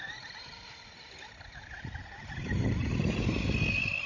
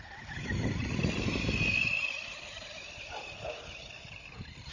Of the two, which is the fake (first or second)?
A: second